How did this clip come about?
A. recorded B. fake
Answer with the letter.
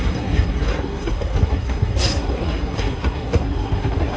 B